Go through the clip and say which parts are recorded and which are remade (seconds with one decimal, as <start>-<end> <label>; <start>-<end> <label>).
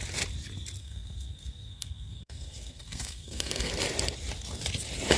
0.0-0.8 recorded; 0.8-3.7 remade; 3.7-5.2 recorded